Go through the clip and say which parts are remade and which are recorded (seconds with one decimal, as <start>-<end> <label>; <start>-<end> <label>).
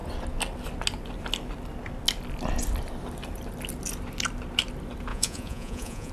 0.0-5.1 recorded; 5.1-6.1 remade